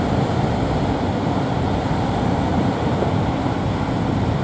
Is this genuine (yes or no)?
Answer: no